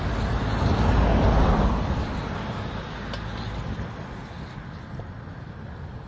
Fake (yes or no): no